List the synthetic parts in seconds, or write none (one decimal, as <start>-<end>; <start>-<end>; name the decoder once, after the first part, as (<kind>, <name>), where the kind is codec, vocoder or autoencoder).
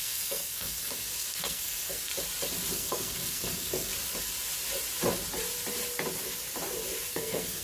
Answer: 0.0-2.1 (codec, SNAC); 2.7-3.9; 7.1-7.6